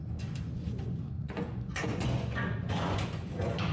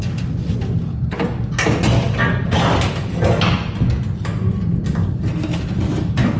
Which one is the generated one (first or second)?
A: first